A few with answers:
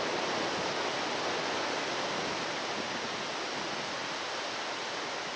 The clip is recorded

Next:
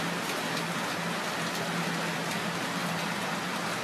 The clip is recorded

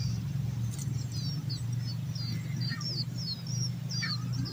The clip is recorded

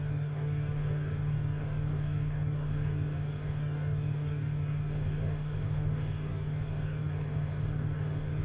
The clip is remade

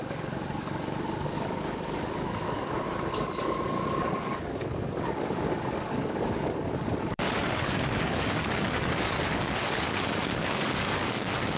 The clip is remade